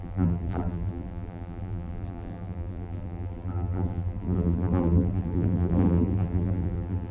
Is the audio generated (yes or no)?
yes